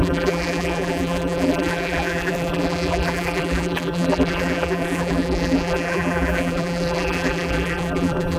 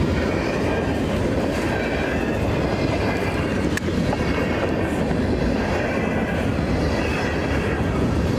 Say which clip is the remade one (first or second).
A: first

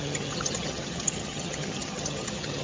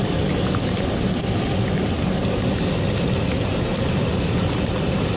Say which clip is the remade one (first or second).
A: first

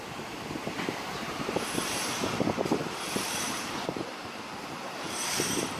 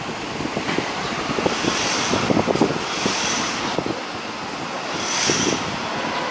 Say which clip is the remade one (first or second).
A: first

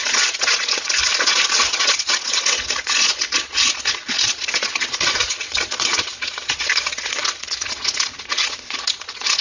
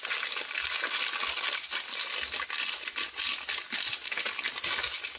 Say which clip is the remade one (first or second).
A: first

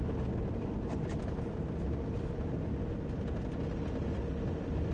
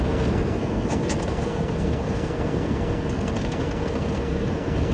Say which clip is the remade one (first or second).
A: second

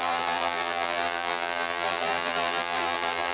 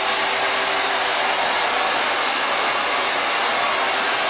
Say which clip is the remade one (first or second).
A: first